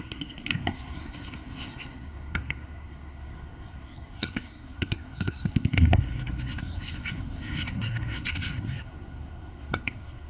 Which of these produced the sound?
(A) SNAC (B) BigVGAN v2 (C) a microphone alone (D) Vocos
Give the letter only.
A